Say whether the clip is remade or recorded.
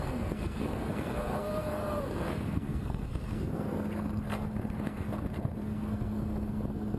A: remade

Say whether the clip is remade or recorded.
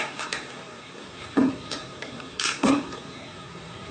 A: remade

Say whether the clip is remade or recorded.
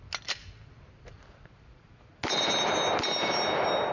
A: recorded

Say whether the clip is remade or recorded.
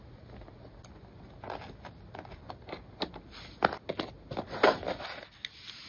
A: recorded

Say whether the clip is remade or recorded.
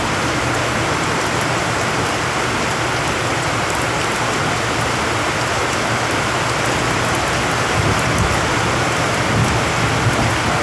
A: recorded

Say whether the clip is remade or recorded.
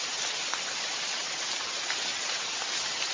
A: recorded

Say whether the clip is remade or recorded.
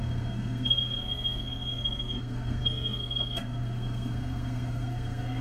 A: remade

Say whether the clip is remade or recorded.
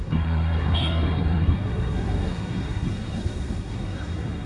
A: remade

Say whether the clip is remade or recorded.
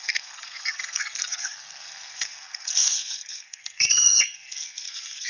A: remade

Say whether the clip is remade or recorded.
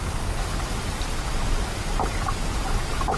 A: recorded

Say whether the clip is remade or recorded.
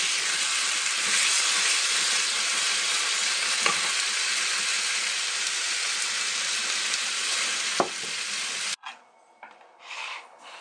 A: recorded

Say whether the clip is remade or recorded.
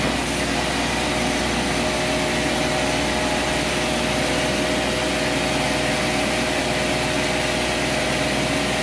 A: recorded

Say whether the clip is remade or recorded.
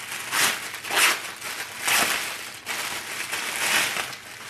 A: recorded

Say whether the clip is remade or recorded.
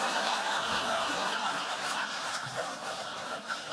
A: remade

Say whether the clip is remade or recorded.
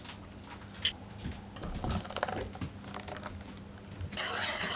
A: recorded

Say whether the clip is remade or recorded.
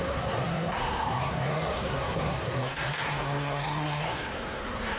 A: remade